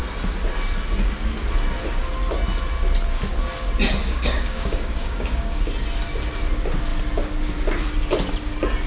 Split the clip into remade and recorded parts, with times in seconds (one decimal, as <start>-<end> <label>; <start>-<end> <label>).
0.0-4.0 recorded; 4.0-5.6 remade; 5.6-8.9 recorded